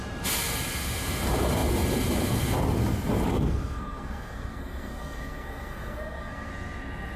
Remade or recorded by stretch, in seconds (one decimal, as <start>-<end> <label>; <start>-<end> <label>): 0.0-3.3 recorded; 3.3-6.5 remade; 6.5-7.2 recorded